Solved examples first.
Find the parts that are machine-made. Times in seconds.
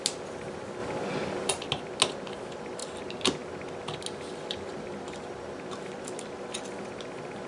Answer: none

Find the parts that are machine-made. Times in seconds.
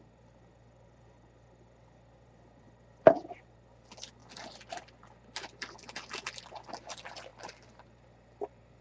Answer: 0.0-4.2 (vocoder, BigVGAN v2); 6.7-8.8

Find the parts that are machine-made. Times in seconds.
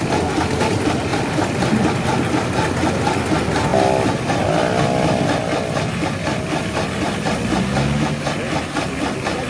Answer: 1.1-1.8 (vocoder, BigVGAN v2)